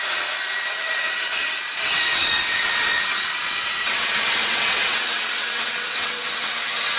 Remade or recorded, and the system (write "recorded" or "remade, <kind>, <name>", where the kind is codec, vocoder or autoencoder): remade, vocoder, WaveNeXt